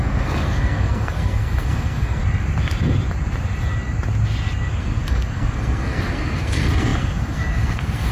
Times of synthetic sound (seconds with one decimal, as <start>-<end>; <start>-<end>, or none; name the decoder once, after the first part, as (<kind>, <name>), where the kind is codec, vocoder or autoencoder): 0.0-2.2 (codec, SNAC); 4.8-8.1